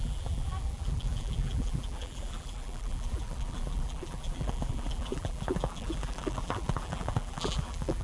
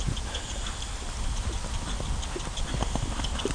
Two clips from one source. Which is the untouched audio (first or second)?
second